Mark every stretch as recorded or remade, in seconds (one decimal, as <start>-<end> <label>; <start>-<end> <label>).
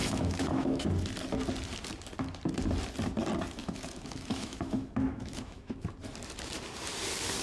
0.0-0.9 remade; 0.9-3.6 recorded; 3.6-5.9 remade; 5.9-7.4 recorded